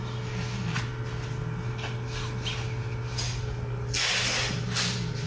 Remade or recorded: recorded